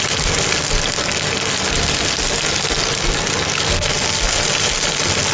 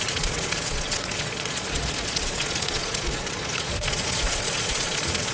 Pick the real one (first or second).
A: first